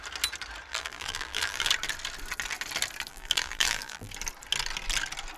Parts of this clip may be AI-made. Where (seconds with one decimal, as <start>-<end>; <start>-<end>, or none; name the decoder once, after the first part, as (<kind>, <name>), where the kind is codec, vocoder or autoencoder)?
0.7-1.7 (vocoder, BigVGAN v2); 3.1-4.1